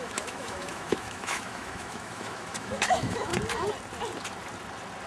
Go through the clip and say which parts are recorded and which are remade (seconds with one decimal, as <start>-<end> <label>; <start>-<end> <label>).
0.0-3.3 remade; 3.3-5.1 recorded